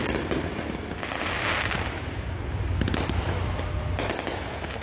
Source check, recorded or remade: recorded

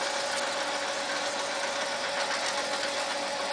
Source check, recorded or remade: recorded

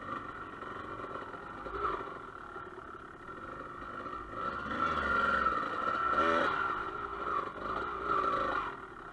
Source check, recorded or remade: recorded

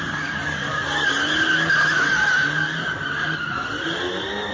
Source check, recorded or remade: recorded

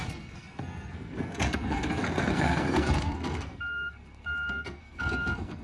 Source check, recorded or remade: remade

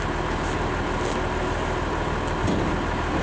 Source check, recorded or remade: recorded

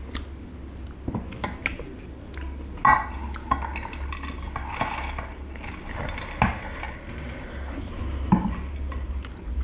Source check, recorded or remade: recorded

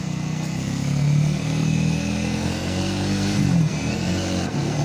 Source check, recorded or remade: remade